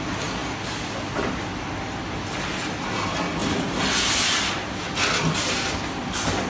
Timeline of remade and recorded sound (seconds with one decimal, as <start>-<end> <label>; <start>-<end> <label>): 0.0-6.5 recorded